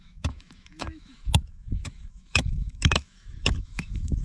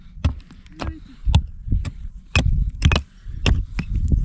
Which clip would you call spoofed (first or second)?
first